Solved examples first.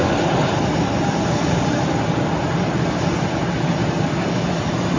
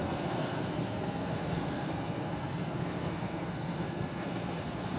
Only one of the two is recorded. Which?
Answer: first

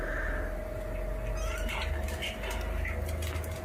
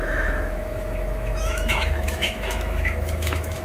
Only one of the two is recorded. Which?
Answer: first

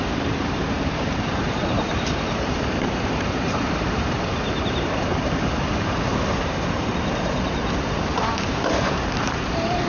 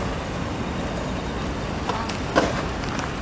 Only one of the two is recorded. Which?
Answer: second